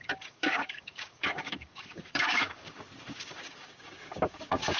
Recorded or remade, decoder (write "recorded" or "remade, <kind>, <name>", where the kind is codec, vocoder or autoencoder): remade, codec, DAC